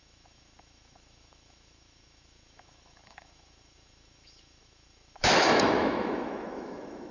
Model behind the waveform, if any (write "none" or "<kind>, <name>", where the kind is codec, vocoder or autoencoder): autoencoder, DAC-VAE